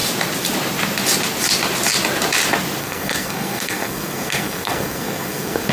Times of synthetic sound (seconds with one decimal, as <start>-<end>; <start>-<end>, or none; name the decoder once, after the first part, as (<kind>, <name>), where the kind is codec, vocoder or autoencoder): 2.8-5.7 (codec, SNAC)